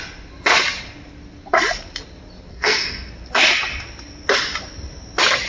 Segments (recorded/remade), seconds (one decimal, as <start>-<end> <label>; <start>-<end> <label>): 0.0-2.5 recorded; 2.5-3.1 remade; 3.1-5.5 recorded